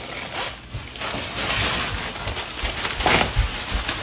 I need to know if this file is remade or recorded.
recorded